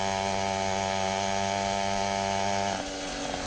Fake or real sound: real